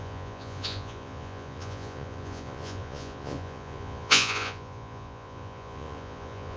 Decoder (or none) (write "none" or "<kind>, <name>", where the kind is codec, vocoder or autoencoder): vocoder, Vocos